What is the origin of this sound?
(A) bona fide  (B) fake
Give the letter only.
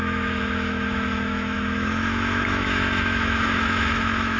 B